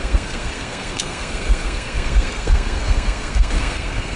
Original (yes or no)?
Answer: no